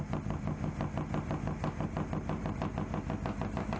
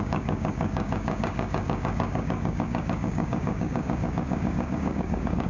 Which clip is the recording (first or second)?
first